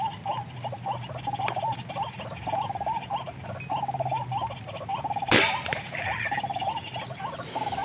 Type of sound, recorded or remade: recorded